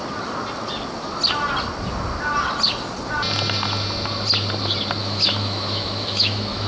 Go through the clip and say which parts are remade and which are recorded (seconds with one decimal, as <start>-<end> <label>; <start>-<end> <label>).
0.0-5.0 recorded; 5.0-6.7 remade